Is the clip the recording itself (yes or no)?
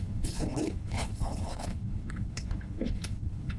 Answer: no